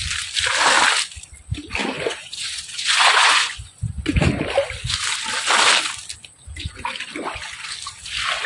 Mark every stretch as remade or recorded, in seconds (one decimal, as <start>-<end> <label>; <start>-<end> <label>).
0.0-1.8 recorded; 1.8-4.2 remade; 4.2-8.5 recorded